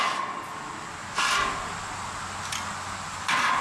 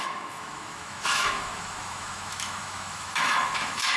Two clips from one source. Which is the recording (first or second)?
first